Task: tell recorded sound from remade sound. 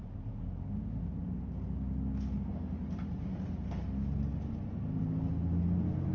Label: recorded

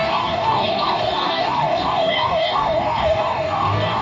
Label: remade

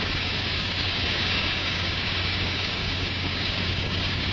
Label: remade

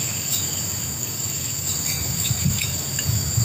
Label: remade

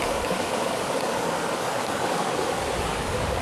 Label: remade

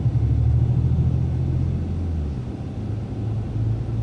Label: recorded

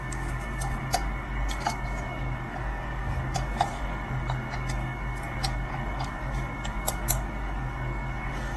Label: remade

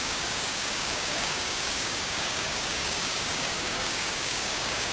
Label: remade